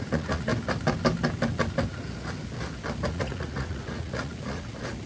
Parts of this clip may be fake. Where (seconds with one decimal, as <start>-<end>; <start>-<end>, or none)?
0.0-0.5; 3.1-5.1